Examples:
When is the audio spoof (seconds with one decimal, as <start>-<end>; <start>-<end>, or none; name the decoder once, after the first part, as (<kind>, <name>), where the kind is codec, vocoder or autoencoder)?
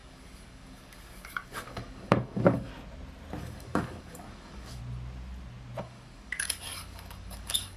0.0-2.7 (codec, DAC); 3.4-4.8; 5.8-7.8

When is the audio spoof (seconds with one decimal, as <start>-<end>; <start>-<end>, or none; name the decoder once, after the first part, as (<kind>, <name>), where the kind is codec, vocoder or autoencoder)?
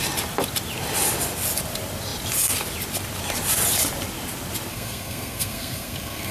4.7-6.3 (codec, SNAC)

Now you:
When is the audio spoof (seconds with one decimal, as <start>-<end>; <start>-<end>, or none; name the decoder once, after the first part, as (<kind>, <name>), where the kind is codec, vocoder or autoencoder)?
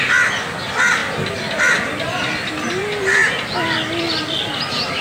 none